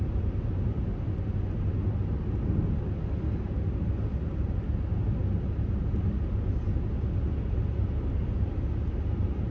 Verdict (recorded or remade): recorded